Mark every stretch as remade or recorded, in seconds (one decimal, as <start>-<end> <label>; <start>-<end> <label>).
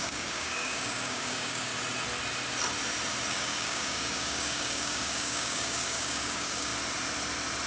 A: 0.0-1.7 remade; 1.7-3.3 recorded; 3.3-6.7 remade; 6.7-7.7 recorded